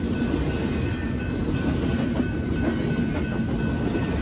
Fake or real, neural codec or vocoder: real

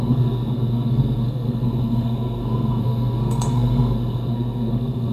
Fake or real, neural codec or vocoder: fake, codec, SNAC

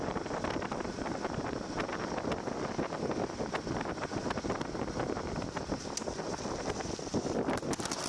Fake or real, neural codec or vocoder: real